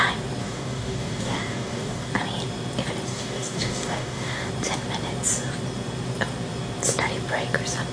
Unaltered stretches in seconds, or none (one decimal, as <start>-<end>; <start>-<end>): 0.0-0.4; 2.1-3.1; 4.5-7.9